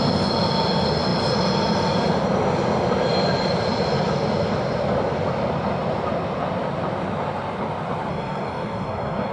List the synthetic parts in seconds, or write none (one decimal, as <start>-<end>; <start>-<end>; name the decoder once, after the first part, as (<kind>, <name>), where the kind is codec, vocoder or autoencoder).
8.1-9.3 (codec, DAC)